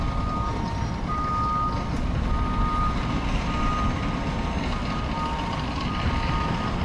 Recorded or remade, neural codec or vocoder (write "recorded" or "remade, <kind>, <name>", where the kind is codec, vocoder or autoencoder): recorded